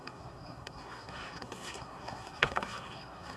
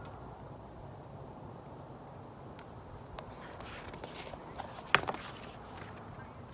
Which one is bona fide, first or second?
second